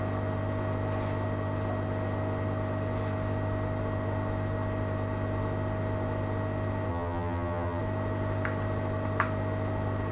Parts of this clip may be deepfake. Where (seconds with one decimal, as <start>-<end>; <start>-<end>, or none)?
6.9-7.8